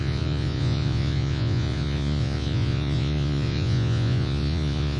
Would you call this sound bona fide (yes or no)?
no